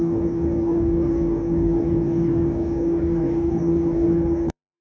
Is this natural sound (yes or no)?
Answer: no